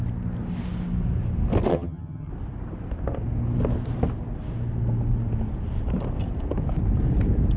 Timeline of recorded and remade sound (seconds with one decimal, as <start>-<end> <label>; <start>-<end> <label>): 0.0-1.7 recorded; 1.7-2.3 remade; 2.3-7.6 recorded